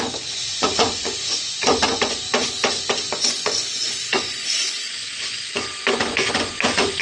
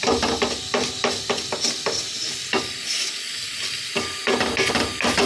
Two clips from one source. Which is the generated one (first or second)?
first